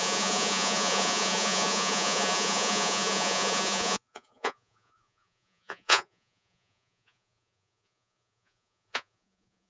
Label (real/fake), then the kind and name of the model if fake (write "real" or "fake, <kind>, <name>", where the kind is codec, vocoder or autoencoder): fake, vocoder, Vocos